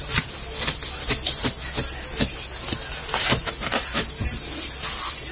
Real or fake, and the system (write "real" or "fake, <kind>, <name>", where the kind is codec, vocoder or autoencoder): real